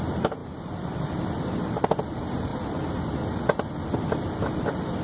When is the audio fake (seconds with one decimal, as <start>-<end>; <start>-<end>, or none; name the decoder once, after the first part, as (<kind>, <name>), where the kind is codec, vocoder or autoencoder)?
none